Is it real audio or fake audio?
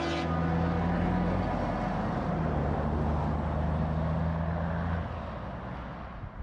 real